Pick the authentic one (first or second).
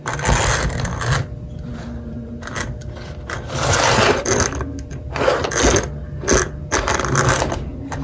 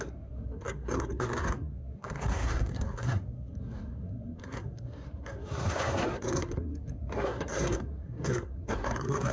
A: first